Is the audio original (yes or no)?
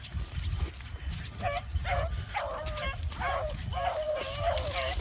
yes